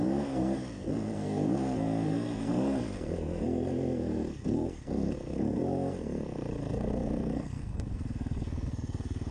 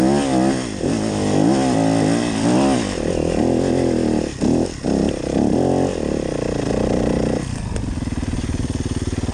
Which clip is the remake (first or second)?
first